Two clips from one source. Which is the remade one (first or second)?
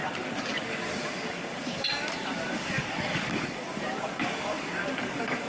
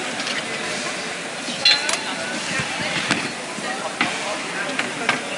first